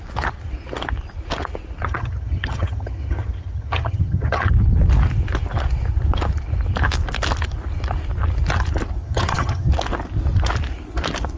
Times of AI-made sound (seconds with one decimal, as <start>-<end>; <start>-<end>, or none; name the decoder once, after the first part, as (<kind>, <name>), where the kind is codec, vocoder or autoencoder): 1.8-4.5 (vocoder, HiFi-GAN); 9.0-9.7